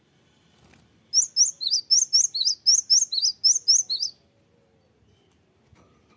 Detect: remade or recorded recorded